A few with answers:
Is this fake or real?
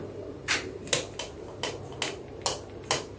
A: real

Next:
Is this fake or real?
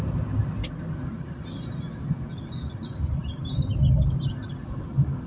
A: real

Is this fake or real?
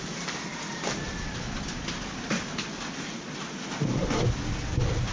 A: real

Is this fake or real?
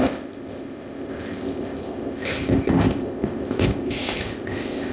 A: fake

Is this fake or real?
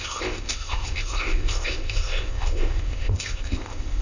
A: fake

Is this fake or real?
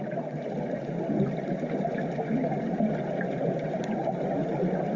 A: real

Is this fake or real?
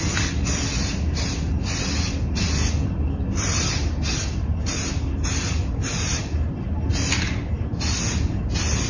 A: real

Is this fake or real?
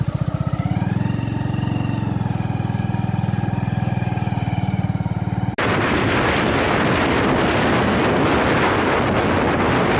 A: real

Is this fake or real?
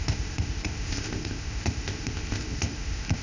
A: fake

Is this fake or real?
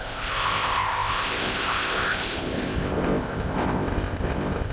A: fake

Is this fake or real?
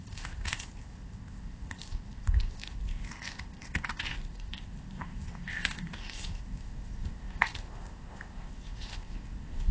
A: fake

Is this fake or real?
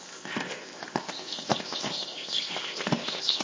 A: fake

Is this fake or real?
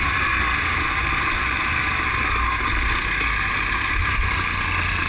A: real